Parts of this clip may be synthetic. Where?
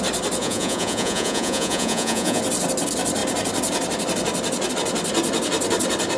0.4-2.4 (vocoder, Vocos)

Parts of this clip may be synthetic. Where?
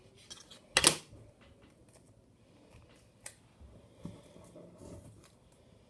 none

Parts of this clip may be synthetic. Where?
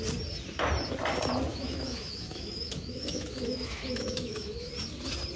1.5-4.7 (autoencoder, DAC-VAE)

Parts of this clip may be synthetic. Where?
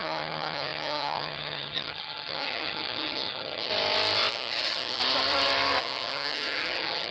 0.0-3.7 (vocoder, HiFi-GAN); 4.3-5.0; 5.8-7.1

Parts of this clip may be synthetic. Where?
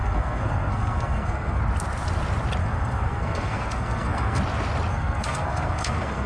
0.0-1.6 (codec, SNAC); 2.6-4.4; 4.9-6.3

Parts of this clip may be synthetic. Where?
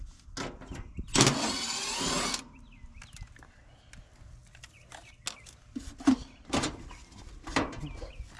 none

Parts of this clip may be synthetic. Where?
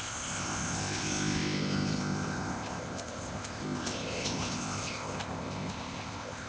0.0-6.5 (codec, ZipCodec)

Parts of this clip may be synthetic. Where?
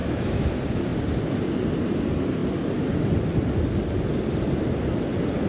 0.0-0.5 (autoencoder, DAC-VAE)